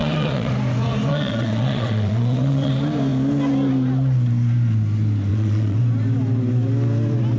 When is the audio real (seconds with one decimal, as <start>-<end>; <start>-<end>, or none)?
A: 0.5-1.1; 2.7-5.3; 5.8-7.4